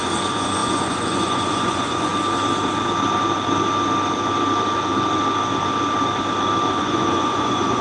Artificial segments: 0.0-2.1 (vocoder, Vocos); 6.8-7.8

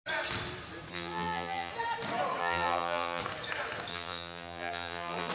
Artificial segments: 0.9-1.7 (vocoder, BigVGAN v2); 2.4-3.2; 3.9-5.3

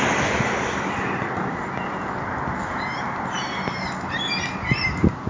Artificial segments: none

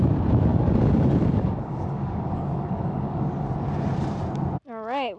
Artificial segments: 0.5-3.5 (codec, DAC)

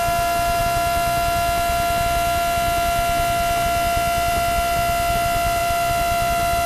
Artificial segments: none

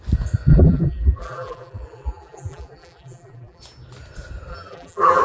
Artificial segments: 0.5-3.6 (vocoder, BigVGAN v2); 4.5-5.2